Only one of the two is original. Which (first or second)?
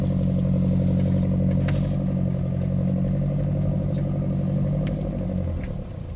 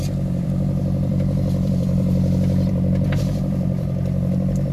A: first